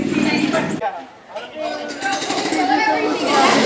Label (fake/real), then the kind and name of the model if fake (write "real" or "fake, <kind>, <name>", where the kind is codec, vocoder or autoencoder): real